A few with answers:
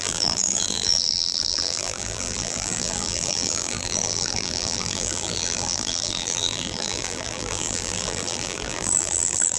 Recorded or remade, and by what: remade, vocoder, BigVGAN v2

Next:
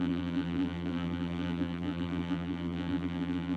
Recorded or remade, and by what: remade, vocoder, BigVGAN v2